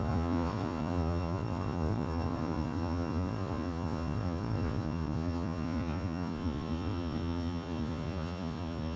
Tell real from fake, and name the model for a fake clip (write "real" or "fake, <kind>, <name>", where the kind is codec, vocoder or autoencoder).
fake, vocoder, Vocos